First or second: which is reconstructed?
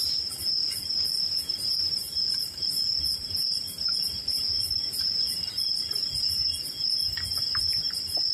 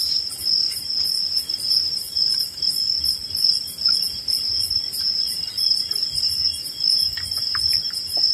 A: first